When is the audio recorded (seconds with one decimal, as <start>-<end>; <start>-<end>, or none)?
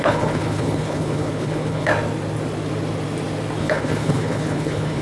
1.9-3.6